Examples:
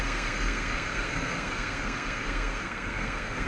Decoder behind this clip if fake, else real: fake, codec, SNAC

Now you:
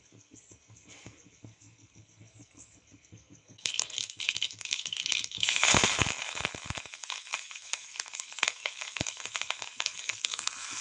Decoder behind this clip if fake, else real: fake, codec, SNAC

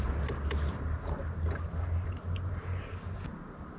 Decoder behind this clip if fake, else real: real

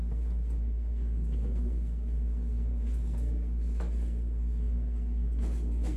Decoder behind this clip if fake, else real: fake, codec, SNAC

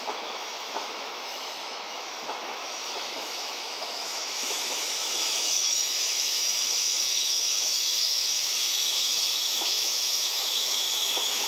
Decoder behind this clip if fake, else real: fake, autoencoder, DAC-VAE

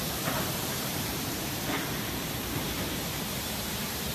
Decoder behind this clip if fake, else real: fake, vocoder, BigVGAN v2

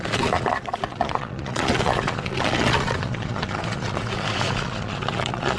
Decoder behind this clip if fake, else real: fake, vocoder, Vocos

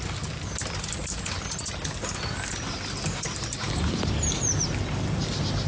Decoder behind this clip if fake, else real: real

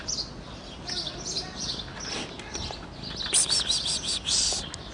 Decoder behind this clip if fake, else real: real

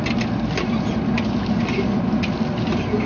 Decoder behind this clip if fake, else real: real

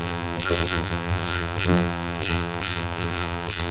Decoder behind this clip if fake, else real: fake, vocoder, BigVGAN v2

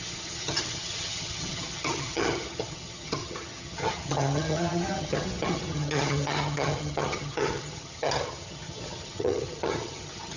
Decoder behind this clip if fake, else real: fake, vocoder, HiFi-GAN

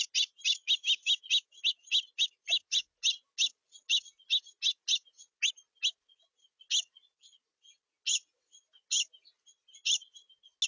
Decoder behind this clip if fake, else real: real